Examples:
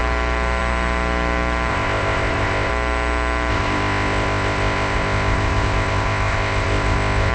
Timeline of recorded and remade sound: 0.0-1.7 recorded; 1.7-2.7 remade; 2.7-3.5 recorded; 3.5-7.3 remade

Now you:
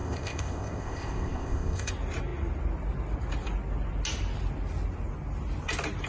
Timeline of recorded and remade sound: 0.0-1.9 remade; 1.9-6.1 recorded

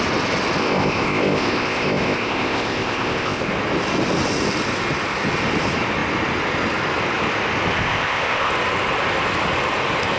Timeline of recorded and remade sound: 0.0-0.6 recorded; 0.6-3.5 remade; 3.5-7.7 recorded; 7.7-8.5 remade; 8.5-10.2 recorded

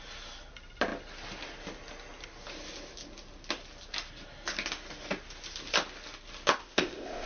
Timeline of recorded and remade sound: 0.0-6.6 recorded; 6.6-7.3 remade

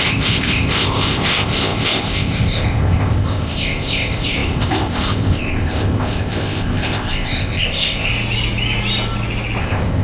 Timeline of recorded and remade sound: 0.0-8.1 remade; 8.1-9.6 recorded; 9.6-10.0 remade

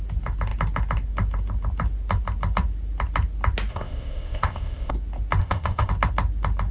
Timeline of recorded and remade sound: 0.0-3.7 recorded; 3.7-4.9 remade; 4.9-5.4 recorded; 5.4-5.9 remade; 5.9-6.7 recorded

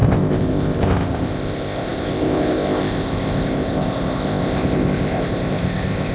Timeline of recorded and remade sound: 0.0-6.1 remade

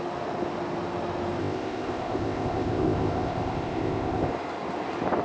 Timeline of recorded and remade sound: 0.0-1.4 recorded; 1.4-4.3 remade; 4.3-5.2 recorded